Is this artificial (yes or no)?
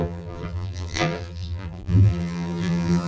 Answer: yes